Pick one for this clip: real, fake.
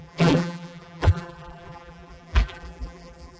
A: fake